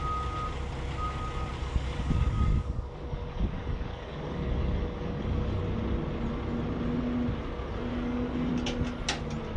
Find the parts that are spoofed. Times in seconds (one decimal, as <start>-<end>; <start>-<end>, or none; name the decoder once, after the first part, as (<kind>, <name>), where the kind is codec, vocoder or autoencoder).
1.6-5.6 (codec, DAC); 7.9-8.5